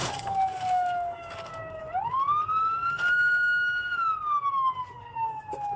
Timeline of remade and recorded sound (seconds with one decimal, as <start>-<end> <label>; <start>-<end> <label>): 0.0-1.8 remade; 1.8-5.8 recorded